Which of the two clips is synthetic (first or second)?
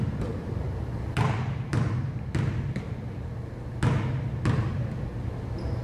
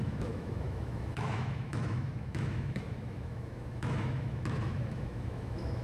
second